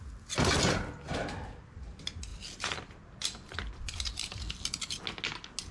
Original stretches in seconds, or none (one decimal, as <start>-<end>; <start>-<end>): 0.0-2.3; 4.9-5.7